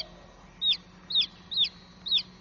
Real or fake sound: real